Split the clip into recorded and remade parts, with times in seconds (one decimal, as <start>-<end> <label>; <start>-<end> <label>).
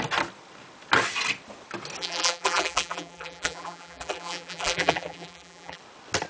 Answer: 0.0-2.0 recorded; 2.0-5.8 remade; 5.8-6.3 recorded